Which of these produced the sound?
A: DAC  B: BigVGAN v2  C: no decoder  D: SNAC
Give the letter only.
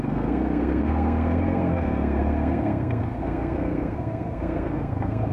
D